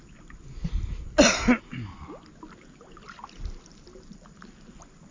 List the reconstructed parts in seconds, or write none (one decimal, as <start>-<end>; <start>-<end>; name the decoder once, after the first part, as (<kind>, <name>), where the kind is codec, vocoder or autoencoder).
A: none

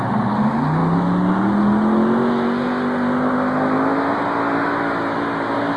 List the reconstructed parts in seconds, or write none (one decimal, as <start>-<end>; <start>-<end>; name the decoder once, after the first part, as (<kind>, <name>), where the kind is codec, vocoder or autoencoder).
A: none

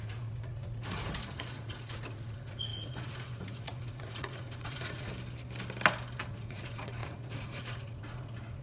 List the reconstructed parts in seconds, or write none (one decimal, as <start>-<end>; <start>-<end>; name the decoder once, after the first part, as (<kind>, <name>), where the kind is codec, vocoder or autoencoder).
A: 0.0-5.1 (vocoder, Vocos); 6.2-8.6